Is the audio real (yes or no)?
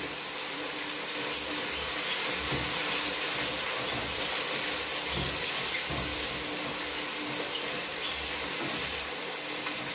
yes